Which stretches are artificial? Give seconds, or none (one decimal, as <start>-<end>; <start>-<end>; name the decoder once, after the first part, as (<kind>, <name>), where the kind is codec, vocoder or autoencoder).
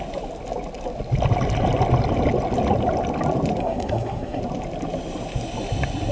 3.6-4.4 (codec, SNAC)